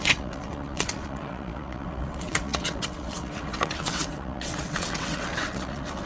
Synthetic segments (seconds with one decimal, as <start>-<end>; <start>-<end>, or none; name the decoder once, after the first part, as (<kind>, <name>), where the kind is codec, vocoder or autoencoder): 0.0-6.1 (vocoder, WaveNeXt)